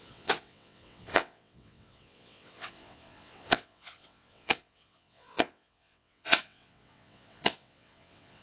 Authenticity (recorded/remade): remade